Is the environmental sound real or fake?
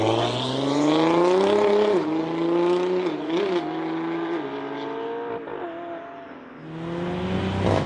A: real